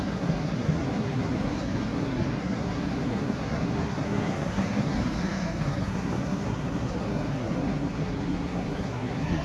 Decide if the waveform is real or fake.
fake